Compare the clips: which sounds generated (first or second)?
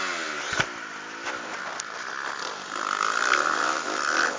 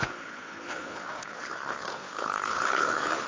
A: second